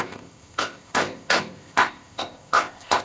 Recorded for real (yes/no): no